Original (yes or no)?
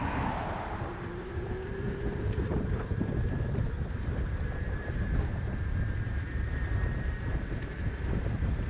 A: no